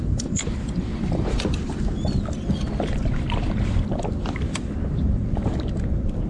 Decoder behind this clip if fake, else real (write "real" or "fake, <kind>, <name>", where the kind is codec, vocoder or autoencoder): fake, vocoder, BigVGAN v2